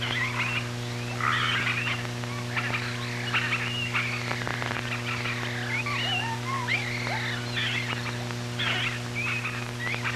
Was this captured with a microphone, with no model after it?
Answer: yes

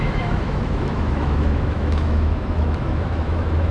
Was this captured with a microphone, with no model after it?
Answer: no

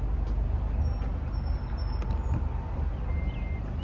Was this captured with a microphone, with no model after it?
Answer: yes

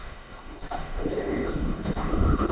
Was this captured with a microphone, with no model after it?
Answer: no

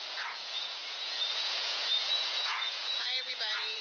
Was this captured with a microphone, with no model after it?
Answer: no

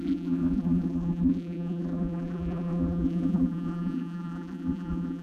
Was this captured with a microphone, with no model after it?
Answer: no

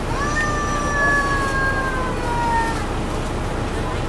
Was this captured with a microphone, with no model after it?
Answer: yes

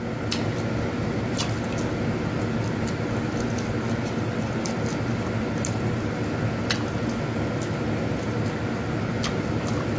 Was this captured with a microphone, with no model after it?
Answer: yes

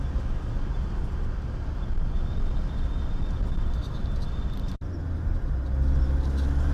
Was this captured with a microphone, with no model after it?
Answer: yes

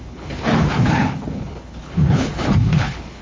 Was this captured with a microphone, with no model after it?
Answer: no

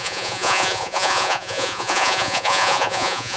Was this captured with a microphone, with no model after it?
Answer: no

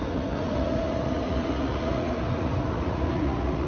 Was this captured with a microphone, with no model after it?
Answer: no